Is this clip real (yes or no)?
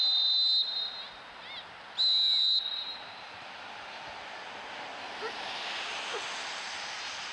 yes